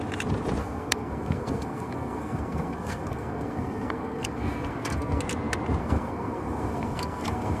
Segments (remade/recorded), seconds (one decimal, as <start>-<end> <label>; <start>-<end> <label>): 0.0-0.6 recorded; 0.6-5.2 remade; 5.2-5.8 recorded; 5.8-7.6 remade